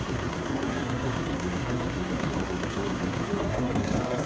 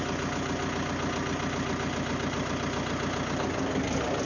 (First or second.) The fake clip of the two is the first